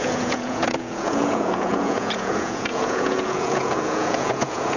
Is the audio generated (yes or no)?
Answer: yes